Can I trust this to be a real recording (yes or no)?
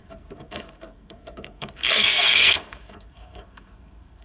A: no